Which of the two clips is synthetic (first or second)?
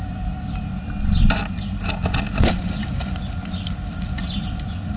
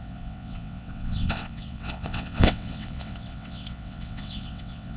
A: second